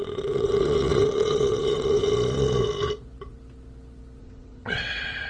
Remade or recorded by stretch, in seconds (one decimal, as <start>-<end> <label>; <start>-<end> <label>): 0.0-2.0 remade; 2.0-4.2 recorded; 4.2-5.3 remade